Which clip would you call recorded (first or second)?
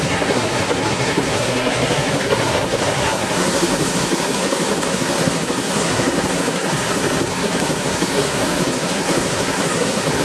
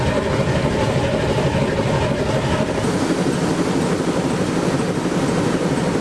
second